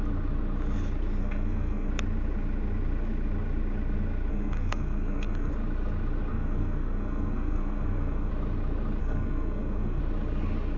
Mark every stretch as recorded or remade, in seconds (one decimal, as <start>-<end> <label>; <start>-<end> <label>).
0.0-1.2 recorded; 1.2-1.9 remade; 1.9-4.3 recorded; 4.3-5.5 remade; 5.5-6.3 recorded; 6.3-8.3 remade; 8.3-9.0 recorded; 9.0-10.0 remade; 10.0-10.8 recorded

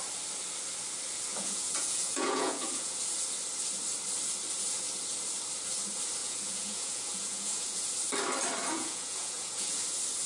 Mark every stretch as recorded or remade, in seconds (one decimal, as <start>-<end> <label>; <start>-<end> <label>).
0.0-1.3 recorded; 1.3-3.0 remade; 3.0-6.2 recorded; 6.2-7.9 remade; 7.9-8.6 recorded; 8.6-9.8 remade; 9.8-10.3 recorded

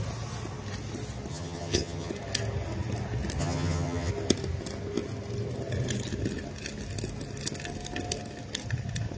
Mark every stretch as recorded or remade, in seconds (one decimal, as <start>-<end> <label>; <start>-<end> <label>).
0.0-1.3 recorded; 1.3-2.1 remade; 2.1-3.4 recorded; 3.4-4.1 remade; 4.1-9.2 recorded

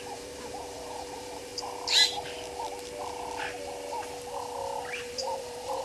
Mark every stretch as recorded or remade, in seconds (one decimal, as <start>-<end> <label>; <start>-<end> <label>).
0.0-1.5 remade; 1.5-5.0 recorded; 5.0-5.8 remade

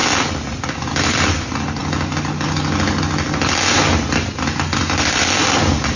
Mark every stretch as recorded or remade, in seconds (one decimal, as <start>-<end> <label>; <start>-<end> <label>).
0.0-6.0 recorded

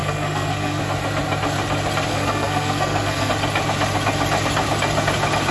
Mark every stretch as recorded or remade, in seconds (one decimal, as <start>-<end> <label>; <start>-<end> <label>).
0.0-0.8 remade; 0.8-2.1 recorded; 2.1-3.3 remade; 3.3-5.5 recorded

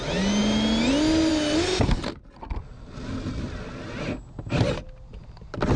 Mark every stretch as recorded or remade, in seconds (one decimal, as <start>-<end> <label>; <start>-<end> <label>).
0.0-5.8 recorded